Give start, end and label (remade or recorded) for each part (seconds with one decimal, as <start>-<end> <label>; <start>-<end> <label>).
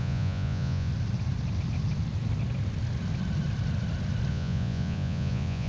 0.0-0.9 remade; 0.9-4.3 recorded; 4.3-5.7 remade